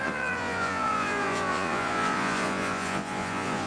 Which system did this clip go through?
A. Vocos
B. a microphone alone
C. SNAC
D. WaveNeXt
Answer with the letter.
A